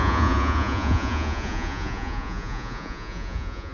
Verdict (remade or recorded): remade